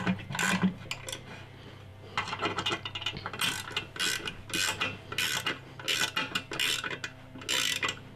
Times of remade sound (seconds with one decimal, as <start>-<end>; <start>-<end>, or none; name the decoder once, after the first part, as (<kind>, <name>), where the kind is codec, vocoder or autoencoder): none